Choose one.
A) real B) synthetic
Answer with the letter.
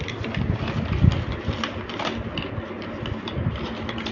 A